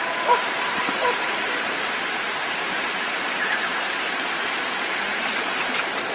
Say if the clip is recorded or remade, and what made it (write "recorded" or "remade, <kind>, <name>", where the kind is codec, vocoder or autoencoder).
remade, vocoder, BigVGAN v2